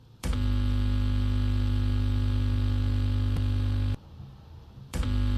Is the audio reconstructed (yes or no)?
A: yes